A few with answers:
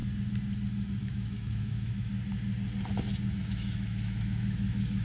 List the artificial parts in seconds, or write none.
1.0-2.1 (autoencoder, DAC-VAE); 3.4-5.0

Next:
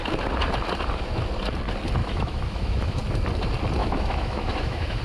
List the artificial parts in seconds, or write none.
2.0-3.0 (autoencoder, DAC-VAE); 3.8-5.0